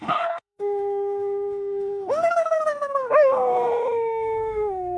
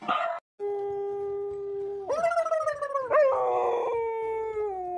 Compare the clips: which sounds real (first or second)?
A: second